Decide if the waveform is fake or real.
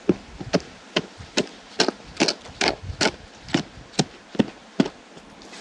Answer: real